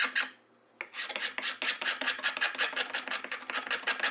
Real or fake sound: real